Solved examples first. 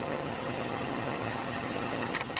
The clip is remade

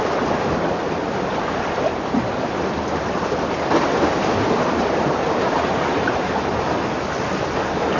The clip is recorded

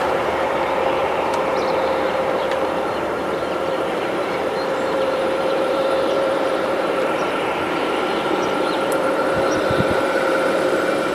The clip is remade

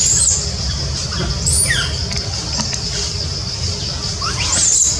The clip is recorded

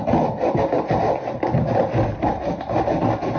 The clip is recorded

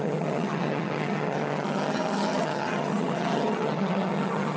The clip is remade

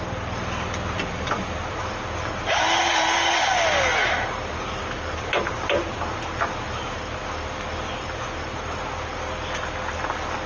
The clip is recorded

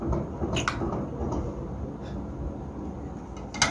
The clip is recorded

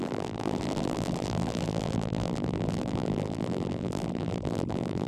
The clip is remade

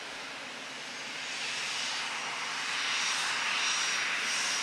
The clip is recorded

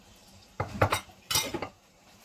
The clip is remade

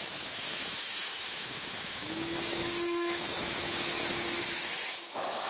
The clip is remade